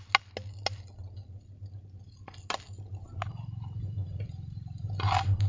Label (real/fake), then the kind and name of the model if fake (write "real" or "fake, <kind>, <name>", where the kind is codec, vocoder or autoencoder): real